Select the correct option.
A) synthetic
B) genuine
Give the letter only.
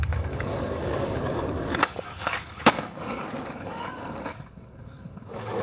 A